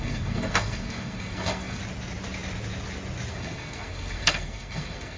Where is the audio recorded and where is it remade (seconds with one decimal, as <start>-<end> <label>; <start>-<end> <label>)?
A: 0.0-1.8 remade; 1.8-3.3 recorded; 3.3-5.2 remade

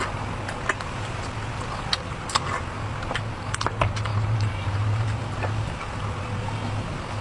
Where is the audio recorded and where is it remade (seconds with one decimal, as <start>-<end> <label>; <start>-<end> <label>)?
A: 0.0-4.1 recorded; 4.1-5.7 remade; 5.7-7.2 recorded

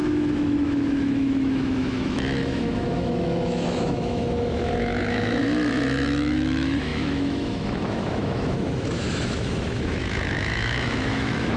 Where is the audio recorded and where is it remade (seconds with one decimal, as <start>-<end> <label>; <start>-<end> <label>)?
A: 0.0-11.6 remade

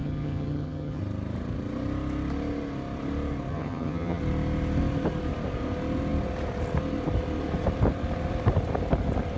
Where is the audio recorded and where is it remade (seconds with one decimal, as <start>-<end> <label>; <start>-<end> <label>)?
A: 0.0-1.0 remade; 1.0-3.5 recorded; 3.5-4.2 remade; 4.2-9.4 recorded

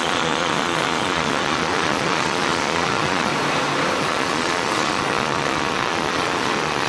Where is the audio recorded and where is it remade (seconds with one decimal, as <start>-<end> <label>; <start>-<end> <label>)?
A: 0.0-3.3 remade; 3.3-4.0 recorded; 4.0-6.9 remade

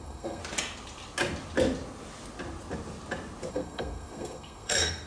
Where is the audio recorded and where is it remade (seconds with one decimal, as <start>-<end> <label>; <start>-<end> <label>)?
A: 0.0-0.4 remade; 0.4-3.5 recorded; 3.5-5.1 remade

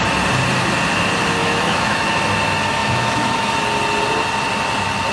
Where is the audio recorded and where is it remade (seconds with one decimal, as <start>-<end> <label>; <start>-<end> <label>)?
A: 0.0-1.4 recorded; 1.4-2.1 remade; 2.1-2.8 recorded; 2.8-3.5 remade; 3.5-5.1 recorded

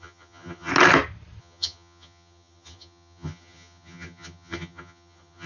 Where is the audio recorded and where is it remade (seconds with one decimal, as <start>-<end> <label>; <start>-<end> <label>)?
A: 0.0-0.7 remade; 0.7-1.4 recorded; 1.4-5.5 remade